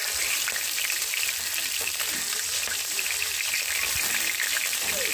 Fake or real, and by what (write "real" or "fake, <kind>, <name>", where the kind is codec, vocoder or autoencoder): fake, vocoder, BigVGAN v2